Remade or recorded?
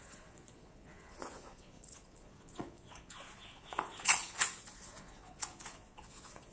remade